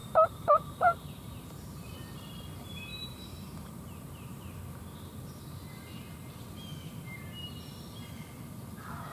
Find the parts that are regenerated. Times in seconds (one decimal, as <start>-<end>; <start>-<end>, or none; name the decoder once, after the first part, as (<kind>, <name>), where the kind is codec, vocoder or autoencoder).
0.0-2.4 (vocoder, BigVGAN v2); 2.9-4.6